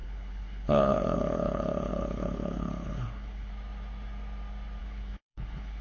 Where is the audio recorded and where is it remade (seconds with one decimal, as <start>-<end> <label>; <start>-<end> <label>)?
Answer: 0.0-3.5 remade; 3.5-4.8 recorded; 4.8-5.8 remade